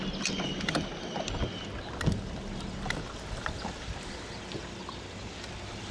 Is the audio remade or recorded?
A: recorded